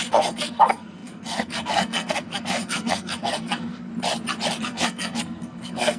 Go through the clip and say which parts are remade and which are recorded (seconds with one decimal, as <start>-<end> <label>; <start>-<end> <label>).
0.0-3.9 remade; 3.9-4.6 recorded; 4.6-6.0 remade

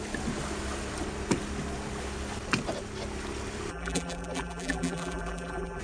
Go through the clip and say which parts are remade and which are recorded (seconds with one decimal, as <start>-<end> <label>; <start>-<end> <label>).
0.0-3.7 recorded; 3.7-5.8 remade

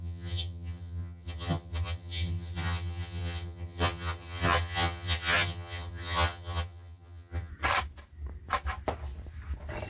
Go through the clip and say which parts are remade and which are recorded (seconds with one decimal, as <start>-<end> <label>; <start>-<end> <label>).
0.0-7.5 remade; 7.5-9.9 recorded

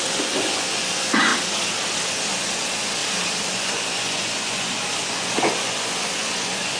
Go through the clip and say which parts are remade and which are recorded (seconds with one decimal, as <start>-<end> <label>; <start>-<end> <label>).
0.0-1.3 remade; 1.3-2.3 recorded; 2.3-3.0 remade; 3.0-3.5 recorded; 3.5-6.8 remade

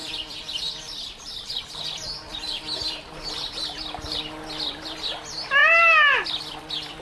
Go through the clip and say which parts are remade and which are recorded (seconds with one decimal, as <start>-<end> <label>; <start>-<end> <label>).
0.0-4.2 remade; 4.2-7.0 recorded